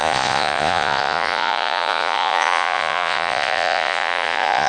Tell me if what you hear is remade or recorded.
remade